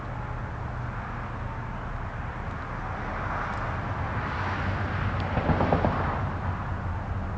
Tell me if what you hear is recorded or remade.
recorded